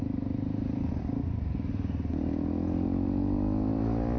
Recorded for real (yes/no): yes